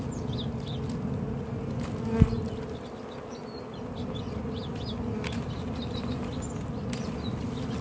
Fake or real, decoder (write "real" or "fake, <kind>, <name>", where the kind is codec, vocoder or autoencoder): real